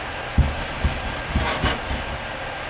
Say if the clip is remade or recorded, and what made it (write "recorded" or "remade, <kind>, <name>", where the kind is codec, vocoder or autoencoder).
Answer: recorded